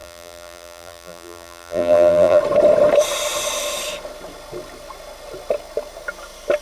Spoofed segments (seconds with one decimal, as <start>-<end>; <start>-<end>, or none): 0.0-2.4